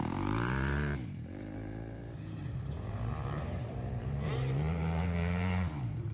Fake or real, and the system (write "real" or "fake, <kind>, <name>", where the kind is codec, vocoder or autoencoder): fake, vocoder, BigVGAN v2